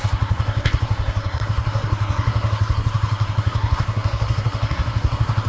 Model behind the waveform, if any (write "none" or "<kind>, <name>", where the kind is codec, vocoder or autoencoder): codec, SNAC